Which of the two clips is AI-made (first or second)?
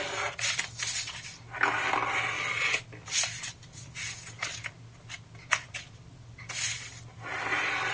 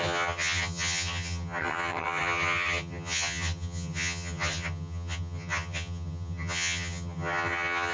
second